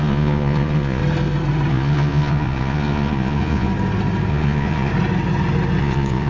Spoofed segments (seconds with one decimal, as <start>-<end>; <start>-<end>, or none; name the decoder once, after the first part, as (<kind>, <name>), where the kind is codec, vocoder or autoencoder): 0.0-1.0 (vocoder, Vocos); 1.7-3.7; 4.3-4.9; 5.8-6.3